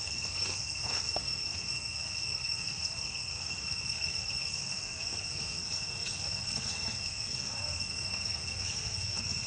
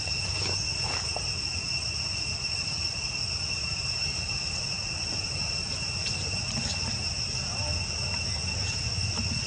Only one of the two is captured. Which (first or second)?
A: second